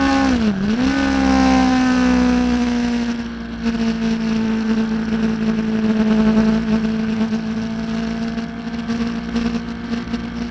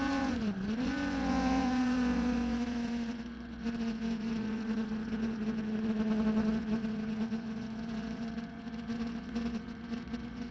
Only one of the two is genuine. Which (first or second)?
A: first